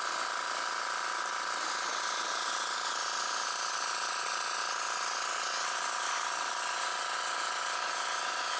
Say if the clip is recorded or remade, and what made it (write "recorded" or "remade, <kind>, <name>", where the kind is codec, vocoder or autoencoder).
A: recorded